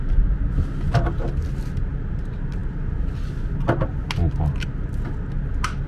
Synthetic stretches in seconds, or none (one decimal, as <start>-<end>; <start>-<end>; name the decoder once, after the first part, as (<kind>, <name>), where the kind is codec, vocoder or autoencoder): none